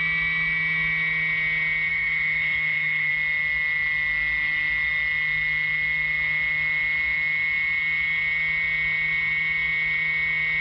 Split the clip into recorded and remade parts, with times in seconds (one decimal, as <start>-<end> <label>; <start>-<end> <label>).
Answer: 0.0-1.9 recorded; 1.9-3.1 remade; 3.1-10.6 recorded

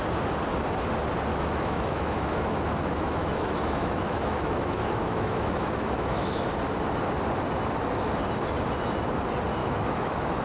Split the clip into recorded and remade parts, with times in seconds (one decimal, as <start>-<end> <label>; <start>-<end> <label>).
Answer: 0.0-1.3 recorded; 1.3-6.5 remade; 6.5-9.6 recorded; 9.6-10.4 remade

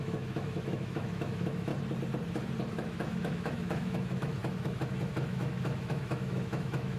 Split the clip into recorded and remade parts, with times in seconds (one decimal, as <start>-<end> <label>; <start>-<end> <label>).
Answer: 0.0-1.7 remade; 1.7-2.7 recorded; 2.7-7.0 remade

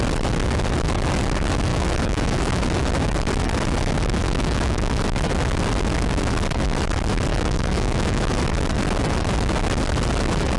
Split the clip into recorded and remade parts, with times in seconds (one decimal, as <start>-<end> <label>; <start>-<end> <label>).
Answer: 0.0-1.7 recorded; 1.7-2.6 remade; 2.6-4.2 recorded; 4.2-4.9 remade; 4.9-7.3 recorded; 7.3-8.4 remade; 8.4-10.6 recorded

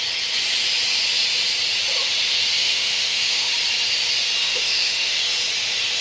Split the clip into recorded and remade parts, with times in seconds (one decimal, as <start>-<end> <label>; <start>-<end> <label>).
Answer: 0.0-2.6 recorded; 2.6-3.5 remade; 3.5-4.4 recorded; 4.4-5.2 remade; 5.2-6.0 recorded

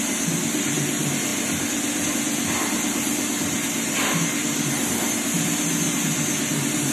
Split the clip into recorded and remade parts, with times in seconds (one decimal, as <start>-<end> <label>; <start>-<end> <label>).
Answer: 0.0-6.9 recorded

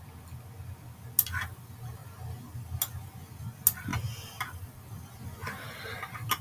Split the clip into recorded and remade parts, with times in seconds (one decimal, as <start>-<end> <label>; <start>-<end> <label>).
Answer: 0.0-6.4 recorded